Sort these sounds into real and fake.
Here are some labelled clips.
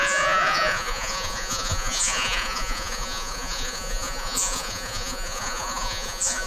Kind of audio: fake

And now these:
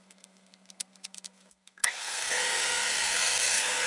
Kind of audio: fake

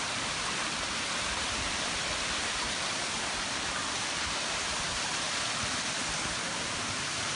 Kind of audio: fake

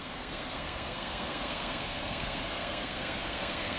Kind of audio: fake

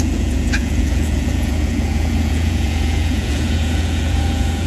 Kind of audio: fake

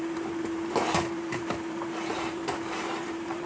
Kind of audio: fake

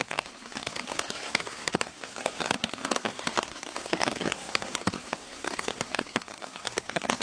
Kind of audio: fake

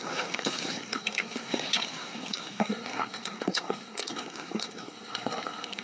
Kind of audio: fake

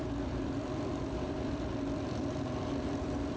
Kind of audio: fake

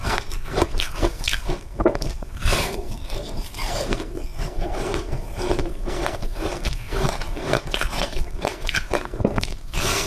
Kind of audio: fake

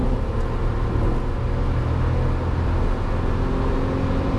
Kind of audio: real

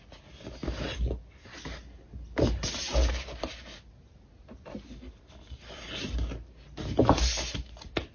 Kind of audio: real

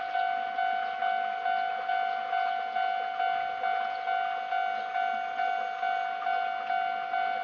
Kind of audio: real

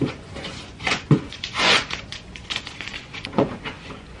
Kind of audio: fake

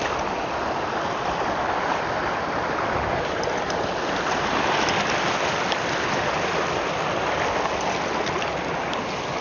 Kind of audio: real